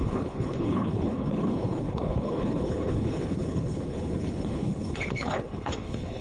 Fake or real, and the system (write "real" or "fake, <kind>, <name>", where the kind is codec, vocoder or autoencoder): fake, codec, HILCodec